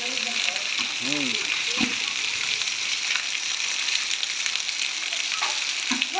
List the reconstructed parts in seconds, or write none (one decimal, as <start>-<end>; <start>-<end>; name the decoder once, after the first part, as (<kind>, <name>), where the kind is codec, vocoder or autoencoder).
1.3-3.1 (vocoder, BigVGAN v2)